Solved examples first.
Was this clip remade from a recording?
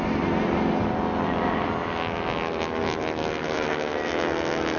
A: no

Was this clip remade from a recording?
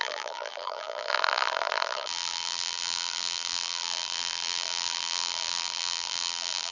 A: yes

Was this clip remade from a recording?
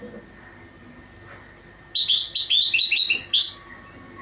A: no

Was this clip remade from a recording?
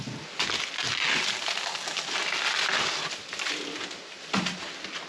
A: no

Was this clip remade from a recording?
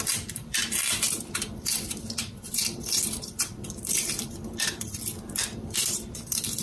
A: yes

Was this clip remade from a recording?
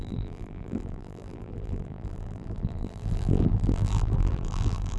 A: yes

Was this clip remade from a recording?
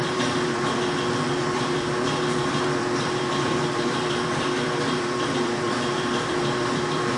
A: yes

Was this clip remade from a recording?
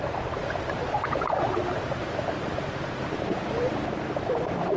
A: yes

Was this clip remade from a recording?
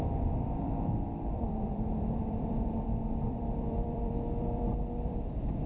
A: yes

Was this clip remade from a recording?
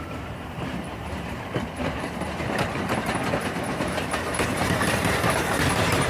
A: yes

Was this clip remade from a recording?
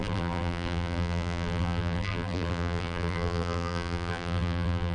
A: yes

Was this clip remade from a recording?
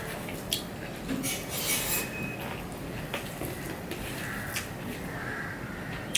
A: no